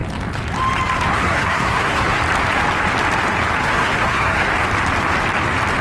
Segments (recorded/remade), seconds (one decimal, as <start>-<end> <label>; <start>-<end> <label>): 0.0-1.1 recorded; 1.1-2.2 remade; 2.2-3.6 recorded; 3.6-4.5 remade; 4.5-5.8 recorded